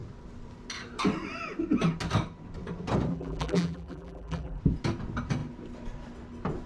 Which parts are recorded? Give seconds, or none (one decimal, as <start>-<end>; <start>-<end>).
0.0-3.1; 4.6-6.7